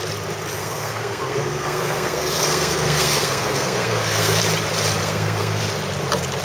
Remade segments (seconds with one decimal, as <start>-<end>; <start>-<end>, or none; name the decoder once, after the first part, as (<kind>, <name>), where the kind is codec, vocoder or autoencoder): 0.6-4.4 (codec, SNAC); 5.0-5.6

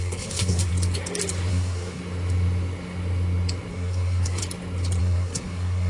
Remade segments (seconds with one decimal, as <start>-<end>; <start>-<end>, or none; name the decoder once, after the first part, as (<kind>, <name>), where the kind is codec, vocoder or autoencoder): 0.0-0.7 (codec, SNAC); 1.5-2.0; 3.7-4.4; 5.0-5.9

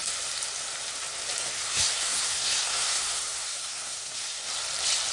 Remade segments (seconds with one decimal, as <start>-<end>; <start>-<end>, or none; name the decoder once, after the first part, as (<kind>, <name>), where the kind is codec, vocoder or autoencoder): 1.4-4.5 (codec, SNAC)

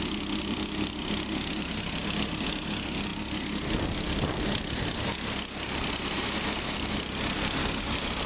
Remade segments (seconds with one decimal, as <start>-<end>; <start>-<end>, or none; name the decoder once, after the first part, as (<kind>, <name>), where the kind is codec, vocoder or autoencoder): none

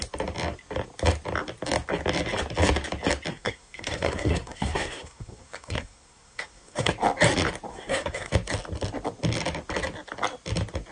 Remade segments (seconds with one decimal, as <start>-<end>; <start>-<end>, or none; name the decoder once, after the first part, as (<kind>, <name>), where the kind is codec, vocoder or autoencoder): 3.3-6.9 (codec, SNAC); 7.7-8.3

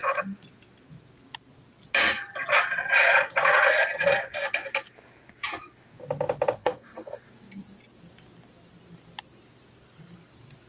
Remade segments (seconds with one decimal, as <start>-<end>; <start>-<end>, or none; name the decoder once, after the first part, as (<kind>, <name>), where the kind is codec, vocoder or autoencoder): 6.6-7.2 (codec, SNAC)

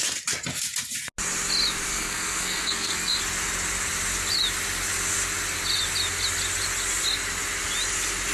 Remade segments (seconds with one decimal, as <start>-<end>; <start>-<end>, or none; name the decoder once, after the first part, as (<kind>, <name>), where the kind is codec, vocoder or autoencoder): 1.9-3.2 (codec, SNAC)